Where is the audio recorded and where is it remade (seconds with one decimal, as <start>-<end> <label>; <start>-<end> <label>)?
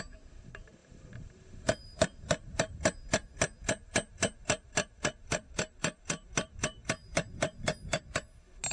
0.0-0.8 recorded; 0.8-2.8 remade; 2.8-7.0 recorded; 7.0-8.0 remade; 8.0-8.7 recorded